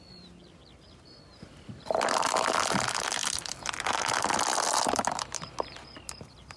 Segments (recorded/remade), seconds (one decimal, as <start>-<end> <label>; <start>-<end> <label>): 0.0-6.6 recorded